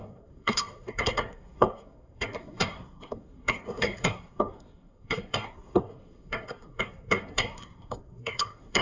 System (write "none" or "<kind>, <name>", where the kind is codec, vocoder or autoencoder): codec, SNAC